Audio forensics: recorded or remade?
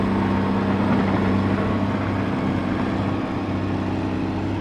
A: recorded